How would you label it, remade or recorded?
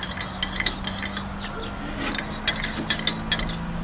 recorded